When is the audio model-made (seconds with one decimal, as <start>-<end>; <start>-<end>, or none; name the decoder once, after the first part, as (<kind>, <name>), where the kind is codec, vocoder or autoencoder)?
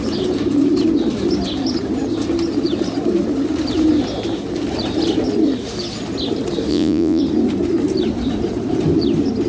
6.7-7.2 (vocoder, Vocos)